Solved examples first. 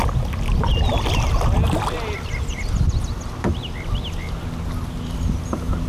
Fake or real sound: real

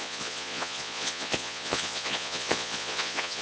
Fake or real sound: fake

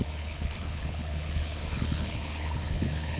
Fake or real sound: fake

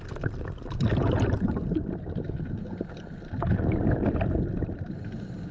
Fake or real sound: real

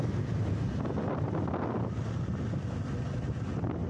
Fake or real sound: real